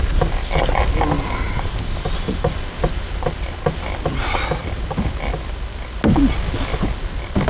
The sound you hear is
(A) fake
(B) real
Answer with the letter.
B